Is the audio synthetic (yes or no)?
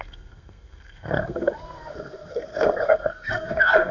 yes